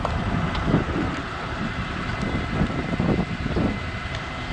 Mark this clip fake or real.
real